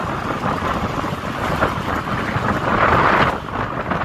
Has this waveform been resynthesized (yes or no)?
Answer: no